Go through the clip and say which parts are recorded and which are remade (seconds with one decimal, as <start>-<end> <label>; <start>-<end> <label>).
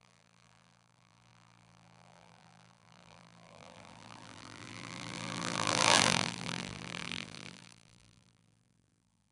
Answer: 0.0-9.3 remade